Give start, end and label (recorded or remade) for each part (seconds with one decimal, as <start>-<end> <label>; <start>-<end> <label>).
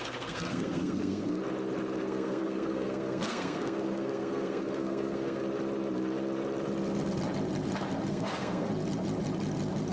0.0-1.4 remade; 1.4-2.0 recorded; 2.0-5.4 remade; 5.4-8.1 recorded; 8.1-8.7 remade; 8.7-9.9 recorded